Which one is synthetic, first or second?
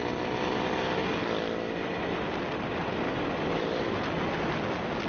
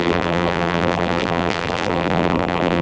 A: second